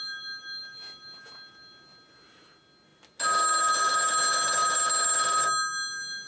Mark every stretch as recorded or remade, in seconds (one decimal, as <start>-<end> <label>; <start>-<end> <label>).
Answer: 0.0-6.3 recorded